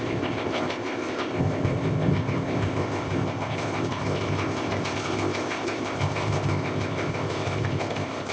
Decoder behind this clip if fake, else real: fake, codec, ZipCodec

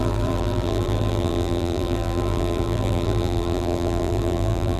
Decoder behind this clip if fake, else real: fake, vocoder, BigVGAN v2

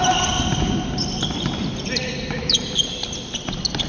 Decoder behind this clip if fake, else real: real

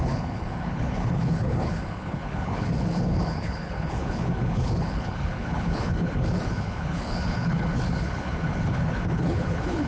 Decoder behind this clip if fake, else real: fake, codec, HILCodec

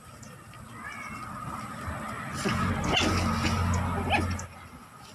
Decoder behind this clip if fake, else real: real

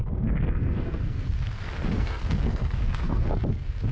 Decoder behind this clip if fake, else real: fake, codec, SNAC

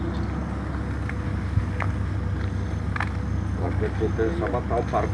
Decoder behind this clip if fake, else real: real